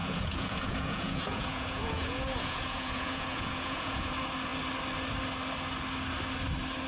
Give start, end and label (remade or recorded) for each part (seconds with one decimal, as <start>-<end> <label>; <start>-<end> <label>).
0.0-4.1 remade; 4.1-6.9 recorded